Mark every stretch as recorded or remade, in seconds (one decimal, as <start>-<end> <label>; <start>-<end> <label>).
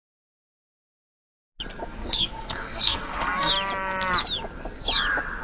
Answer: 0.0-2.0 recorded; 2.0-3.5 remade; 3.5-5.4 recorded